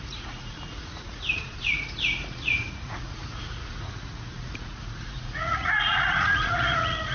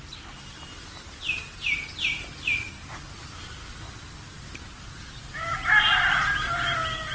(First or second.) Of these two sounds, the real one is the second